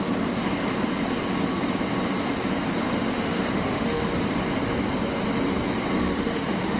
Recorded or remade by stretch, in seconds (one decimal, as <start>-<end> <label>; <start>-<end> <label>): 0.0-2.9 recorded; 2.9-4.0 remade; 4.0-6.0 recorded; 6.0-6.8 remade